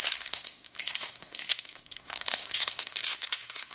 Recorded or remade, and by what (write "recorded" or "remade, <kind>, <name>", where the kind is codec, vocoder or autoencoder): remade, codec, SNAC